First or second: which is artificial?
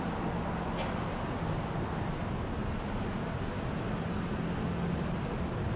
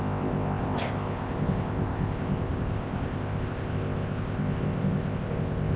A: second